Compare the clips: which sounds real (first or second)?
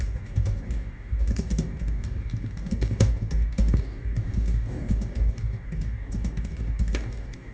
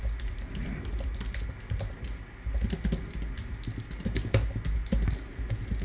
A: second